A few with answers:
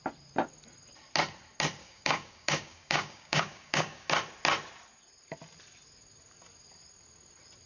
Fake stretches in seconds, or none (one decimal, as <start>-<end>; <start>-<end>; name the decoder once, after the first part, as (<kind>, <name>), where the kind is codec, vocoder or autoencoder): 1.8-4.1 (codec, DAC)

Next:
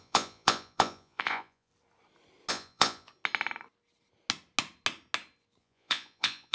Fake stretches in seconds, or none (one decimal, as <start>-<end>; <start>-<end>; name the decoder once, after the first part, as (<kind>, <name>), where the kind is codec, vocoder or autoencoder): 0.0-1.7 (vocoder, Vocos); 2.5-3.1; 5.6-6.5

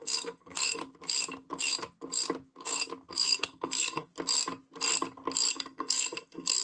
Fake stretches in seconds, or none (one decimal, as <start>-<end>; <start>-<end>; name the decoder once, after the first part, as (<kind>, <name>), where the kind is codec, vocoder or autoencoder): 0.0-0.8 (codec, SNAC); 3.1-4.1; 5.5-6.6

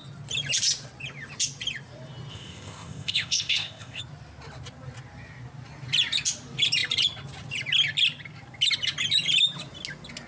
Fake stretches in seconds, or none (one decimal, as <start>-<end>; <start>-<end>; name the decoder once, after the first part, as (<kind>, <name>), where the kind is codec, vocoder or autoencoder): 2.3-4.0 (codec, ZipCodec)

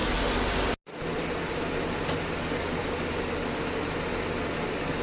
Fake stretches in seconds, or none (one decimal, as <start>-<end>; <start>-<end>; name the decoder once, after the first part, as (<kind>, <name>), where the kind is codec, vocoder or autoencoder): none

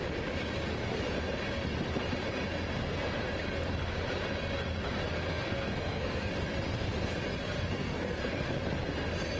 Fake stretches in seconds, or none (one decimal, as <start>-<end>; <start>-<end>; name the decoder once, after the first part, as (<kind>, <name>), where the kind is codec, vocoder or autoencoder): 5.3-6.3 (codec, SNAC); 7.4-8.2

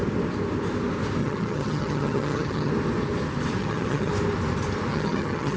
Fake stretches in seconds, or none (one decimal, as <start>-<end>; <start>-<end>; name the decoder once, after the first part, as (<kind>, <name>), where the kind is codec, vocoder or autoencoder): 1.2-2.7 (vocoder, HiFi-GAN); 3.6-4.1; 4.9-5.6

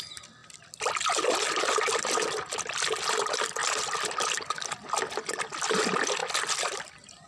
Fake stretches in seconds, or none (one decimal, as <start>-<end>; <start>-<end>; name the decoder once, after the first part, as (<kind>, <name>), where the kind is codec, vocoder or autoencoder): none